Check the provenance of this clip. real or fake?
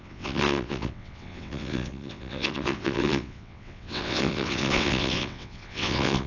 fake